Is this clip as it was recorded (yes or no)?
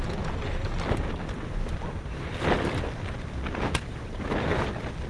yes